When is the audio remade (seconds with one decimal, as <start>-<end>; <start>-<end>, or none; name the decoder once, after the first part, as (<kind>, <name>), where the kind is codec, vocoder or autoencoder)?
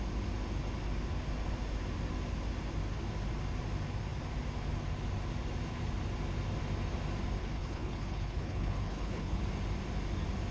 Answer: 7.4-9.4 (codec, HILCodec)